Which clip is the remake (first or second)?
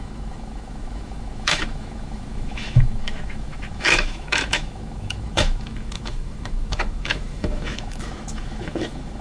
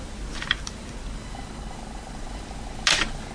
first